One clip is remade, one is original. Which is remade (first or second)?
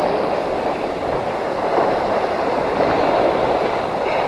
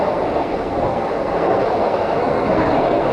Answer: second